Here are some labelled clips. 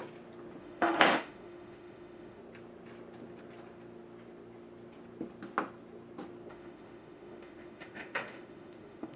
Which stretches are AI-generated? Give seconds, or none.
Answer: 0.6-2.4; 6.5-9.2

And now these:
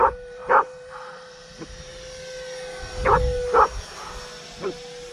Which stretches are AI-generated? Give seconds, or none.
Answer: 0.0-1.9